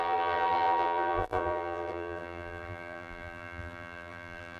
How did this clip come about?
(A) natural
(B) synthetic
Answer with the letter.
B